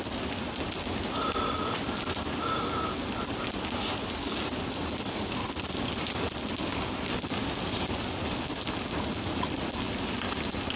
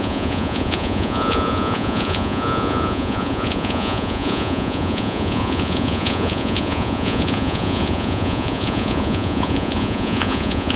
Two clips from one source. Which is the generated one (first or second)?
second